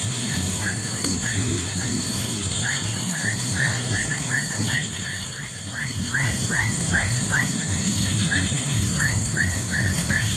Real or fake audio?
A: fake